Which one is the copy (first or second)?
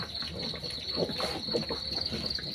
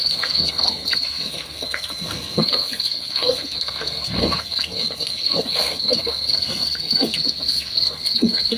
second